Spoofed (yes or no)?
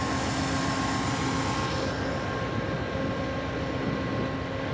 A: no